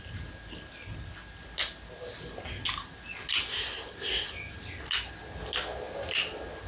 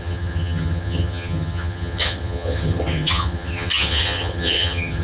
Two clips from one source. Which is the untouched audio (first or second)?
first